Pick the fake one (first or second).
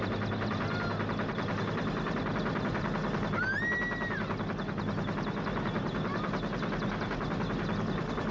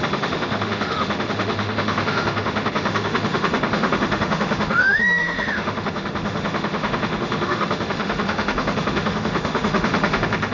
second